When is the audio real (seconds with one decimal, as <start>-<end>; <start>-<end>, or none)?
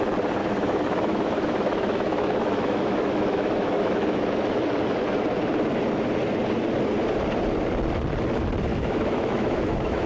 0.0-0.4; 4.2-8.7